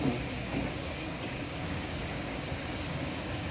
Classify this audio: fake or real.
fake